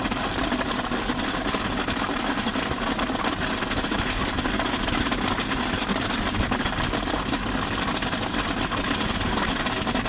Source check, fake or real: real